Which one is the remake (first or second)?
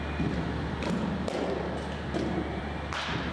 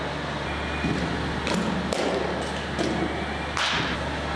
first